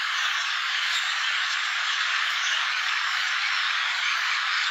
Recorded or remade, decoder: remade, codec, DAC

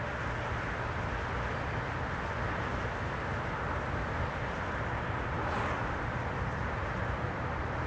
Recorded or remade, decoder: recorded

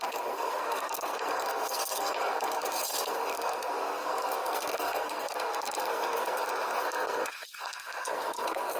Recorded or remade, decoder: remade, codec, SNAC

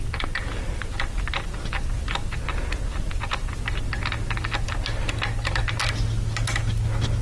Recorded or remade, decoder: recorded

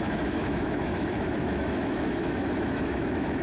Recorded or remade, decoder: remade, autoencoder, DAC-VAE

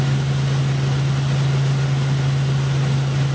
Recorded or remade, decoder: recorded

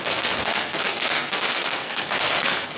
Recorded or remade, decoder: remade, codec, SNAC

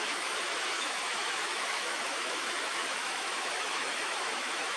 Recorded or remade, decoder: remade, autoencoder, DAC-VAE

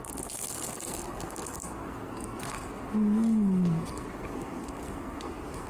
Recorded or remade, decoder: remade, codec, SNAC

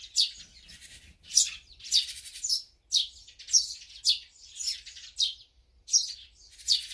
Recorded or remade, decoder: recorded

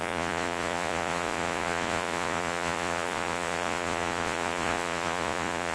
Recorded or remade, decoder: remade, vocoder, Vocos